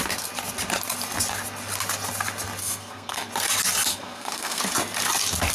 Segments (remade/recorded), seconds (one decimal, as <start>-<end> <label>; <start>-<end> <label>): 0.0-2.6 recorded; 2.6-3.3 remade; 3.3-3.9 recorded; 3.9-4.6 remade; 4.6-5.5 recorded